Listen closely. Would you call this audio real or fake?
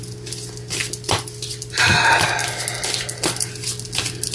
real